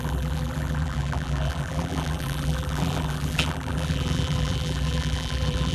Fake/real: fake